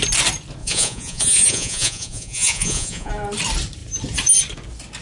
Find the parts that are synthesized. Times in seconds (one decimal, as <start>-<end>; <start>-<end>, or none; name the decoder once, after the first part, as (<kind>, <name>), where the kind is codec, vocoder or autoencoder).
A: 0.6-3.1 (vocoder, Vocos)